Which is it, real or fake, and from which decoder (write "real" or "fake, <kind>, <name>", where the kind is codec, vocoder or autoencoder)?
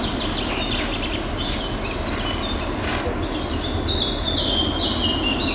real